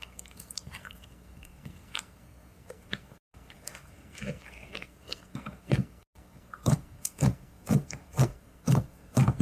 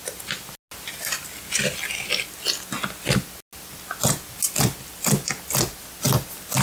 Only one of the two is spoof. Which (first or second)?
first